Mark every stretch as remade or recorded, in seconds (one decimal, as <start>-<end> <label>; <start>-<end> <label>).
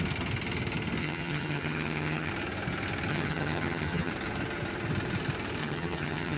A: 0.0-1.0 recorded; 1.0-2.3 remade; 2.3-3.1 recorded; 3.1-4.1 remade; 4.1-5.6 recorded; 5.6-6.4 remade